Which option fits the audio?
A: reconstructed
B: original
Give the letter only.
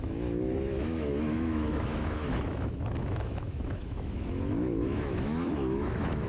A